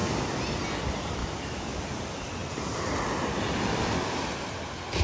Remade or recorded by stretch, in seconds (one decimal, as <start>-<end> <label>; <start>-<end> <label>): 0.0-1.2 recorded; 1.2-1.8 remade; 1.8-5.0 recorded